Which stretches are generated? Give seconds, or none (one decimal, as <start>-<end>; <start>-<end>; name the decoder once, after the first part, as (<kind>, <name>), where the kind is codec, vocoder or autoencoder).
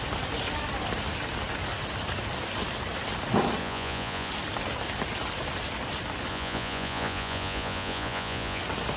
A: 3.6-4.3 (vocoder, Vocos); 6.3-8.6